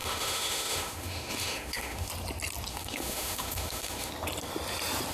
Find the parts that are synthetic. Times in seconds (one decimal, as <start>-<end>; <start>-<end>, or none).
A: 0.0-2.1; 2.7-4.1